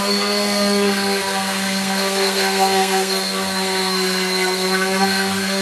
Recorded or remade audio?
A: remade